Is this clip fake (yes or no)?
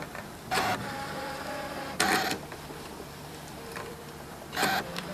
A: yes